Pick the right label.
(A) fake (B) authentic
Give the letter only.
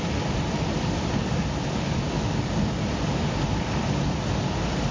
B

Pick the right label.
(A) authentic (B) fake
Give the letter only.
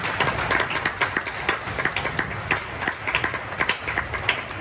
A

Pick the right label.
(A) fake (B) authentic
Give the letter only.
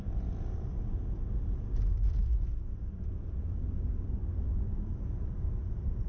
A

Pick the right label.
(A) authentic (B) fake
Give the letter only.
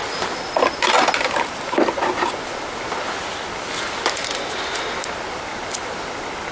A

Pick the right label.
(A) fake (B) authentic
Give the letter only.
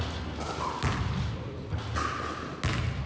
B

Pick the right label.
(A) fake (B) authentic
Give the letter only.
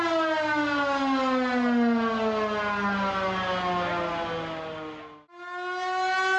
B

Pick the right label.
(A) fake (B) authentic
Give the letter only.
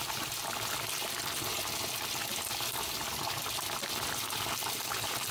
B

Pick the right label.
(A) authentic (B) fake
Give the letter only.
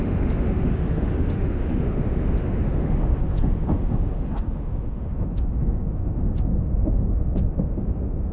B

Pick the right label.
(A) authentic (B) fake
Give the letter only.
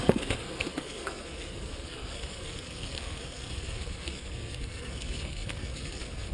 B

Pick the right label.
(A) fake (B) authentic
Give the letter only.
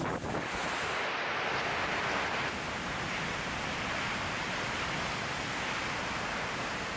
B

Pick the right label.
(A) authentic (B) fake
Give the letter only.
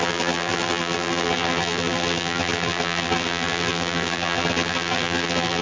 B